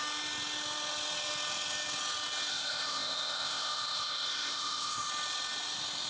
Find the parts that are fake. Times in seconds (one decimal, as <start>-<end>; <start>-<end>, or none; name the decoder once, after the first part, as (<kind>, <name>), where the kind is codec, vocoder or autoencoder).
2.5-5.1 (codec, ZipCodec)